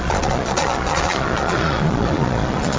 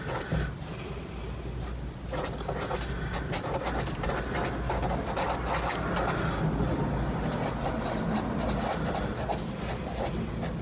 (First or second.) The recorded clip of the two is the second